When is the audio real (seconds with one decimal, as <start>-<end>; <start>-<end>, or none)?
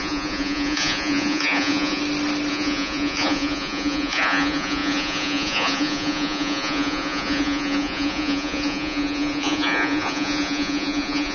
2.0-2.5